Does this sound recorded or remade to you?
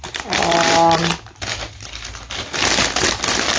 recorded